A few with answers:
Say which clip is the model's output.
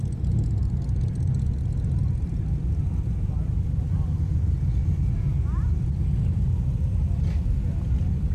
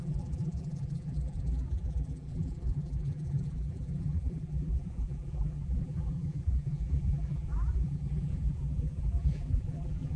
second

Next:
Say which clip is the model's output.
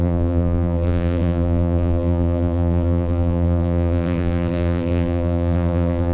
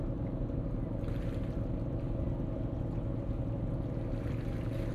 first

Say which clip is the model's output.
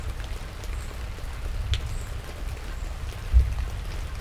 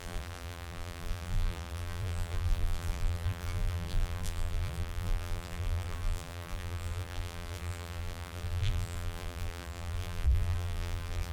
second